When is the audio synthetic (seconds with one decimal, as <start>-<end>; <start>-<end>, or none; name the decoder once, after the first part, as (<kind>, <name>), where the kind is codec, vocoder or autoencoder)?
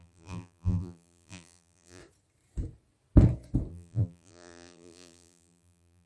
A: 0.0-2.0 (vocoder, BigVGAN v2); 3.7-6.1